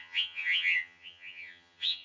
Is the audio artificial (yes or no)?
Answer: yes